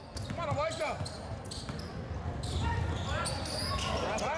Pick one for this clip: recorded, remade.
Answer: recorded